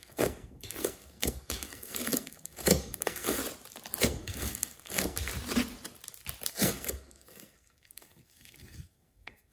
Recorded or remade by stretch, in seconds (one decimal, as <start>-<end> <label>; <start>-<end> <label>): 0.0-3.4 remade; 3.4-4.0 recorded; 4.0-5.3 remade; 5.3-6.5 recorded; 6.5-9.5 remade